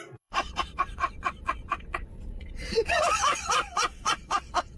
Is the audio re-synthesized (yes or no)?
yes